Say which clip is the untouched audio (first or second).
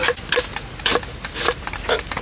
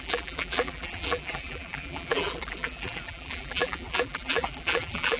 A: first